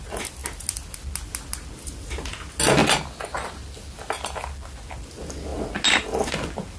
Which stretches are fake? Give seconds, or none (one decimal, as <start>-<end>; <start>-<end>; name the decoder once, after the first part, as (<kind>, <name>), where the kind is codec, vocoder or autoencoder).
none